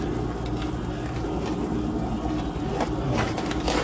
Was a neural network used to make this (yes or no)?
no